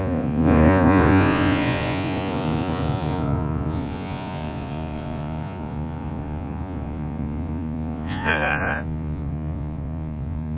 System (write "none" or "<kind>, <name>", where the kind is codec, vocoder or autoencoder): vocoder, Vocos